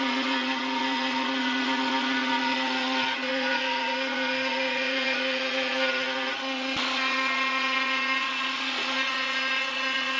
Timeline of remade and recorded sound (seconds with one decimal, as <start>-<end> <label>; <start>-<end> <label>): 0.0-10.2 remade